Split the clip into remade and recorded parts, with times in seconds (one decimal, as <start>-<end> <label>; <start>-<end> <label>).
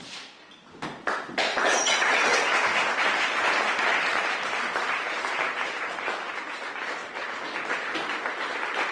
0.0-1.5 recorded; 1.5-2.5 remade; 2.5-8.9 recorded